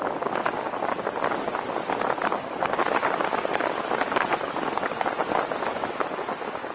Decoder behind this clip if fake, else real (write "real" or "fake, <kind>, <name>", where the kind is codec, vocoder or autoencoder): real